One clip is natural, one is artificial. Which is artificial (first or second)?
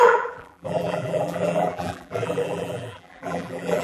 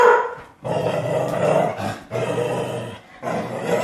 first